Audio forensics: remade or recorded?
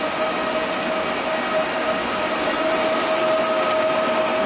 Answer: recorded